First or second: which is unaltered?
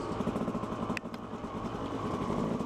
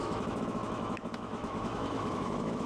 first